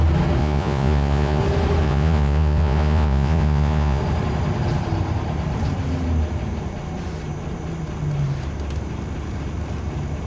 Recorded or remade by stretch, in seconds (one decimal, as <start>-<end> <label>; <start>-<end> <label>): 0.0-0.4 recorded; 0.4-1.4 remade; 1.4-1.8 recorded; 1.8-4.0 remade; 4.0-10.3 recorded